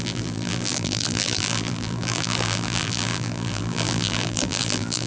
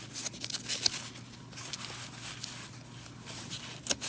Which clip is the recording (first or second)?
second